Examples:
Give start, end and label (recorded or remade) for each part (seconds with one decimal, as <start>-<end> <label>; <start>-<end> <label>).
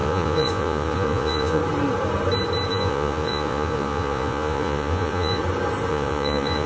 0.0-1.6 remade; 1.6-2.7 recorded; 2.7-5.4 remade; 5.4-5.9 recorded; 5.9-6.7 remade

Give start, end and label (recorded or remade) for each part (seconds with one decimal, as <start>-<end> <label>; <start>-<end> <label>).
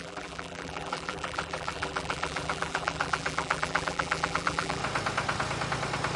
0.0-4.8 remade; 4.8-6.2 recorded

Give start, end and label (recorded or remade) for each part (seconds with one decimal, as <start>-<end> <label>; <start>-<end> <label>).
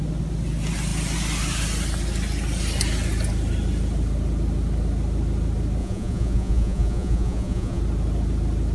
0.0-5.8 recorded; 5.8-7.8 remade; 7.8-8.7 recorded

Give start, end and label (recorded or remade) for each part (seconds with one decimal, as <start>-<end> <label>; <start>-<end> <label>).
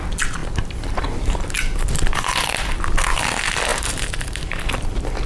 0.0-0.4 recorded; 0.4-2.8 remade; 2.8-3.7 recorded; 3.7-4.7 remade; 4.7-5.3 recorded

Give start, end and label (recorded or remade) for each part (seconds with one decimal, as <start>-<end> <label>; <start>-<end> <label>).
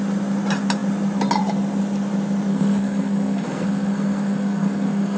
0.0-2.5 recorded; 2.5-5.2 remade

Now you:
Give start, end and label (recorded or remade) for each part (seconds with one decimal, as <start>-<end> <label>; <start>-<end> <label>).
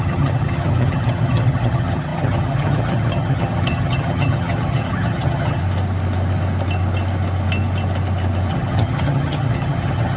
0.0-5.6 remade; 5.6-8.5 recorded; 8.5-10.2 remade